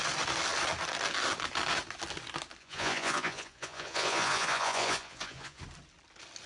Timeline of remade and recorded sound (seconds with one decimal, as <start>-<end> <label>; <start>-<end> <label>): 0.0-2.6 recorded; 2.6-5.6 remade; 5.6-6.5 recorded